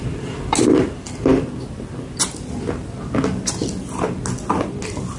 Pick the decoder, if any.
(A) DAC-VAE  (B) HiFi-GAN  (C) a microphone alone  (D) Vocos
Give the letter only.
C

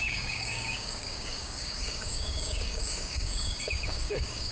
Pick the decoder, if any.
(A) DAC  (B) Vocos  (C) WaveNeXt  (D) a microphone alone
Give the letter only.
A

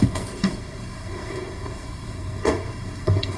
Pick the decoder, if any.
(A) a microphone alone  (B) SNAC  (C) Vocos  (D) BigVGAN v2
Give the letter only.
B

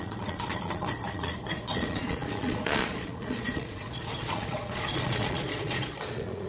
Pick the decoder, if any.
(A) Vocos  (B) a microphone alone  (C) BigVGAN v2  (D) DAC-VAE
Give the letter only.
A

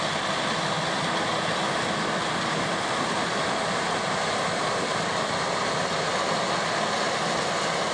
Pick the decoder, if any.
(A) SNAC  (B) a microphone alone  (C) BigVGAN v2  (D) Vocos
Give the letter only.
B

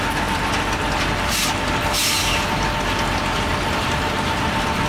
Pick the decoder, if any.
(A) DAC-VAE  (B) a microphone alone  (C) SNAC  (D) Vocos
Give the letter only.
B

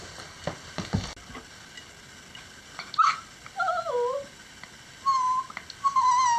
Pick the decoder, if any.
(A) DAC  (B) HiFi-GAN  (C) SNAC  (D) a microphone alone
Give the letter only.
D